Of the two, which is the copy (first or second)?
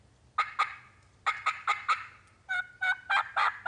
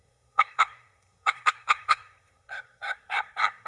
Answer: second